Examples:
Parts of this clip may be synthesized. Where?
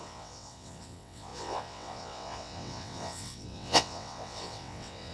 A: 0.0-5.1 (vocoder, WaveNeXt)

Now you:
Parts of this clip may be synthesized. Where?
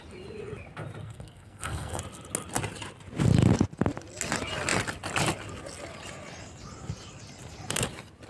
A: 1.0-2.0 (codec, SNAC)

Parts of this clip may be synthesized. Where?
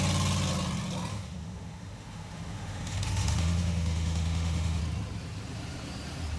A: 1.1-4.8 (autoencoder, DAC-VAE)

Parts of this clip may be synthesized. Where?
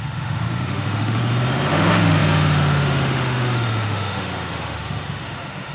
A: 0.0-1.2 (autoencoder, DAC-VAE); 1.7-5.7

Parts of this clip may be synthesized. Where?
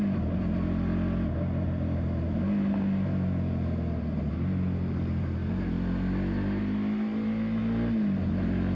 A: none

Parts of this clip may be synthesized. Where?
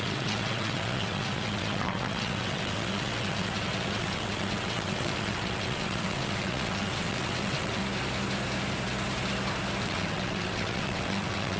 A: 0.0-7.8 (vocoder, WaveNeXt); 9.8-11.6